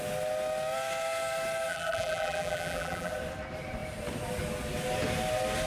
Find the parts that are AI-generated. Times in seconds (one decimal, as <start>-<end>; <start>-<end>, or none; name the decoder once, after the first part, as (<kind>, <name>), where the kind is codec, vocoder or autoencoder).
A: 1.7-3.1 (vocoder, BigVGAN v2)